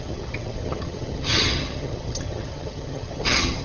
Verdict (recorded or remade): remade